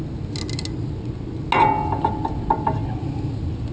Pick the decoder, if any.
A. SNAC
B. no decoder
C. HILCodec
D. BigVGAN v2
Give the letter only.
B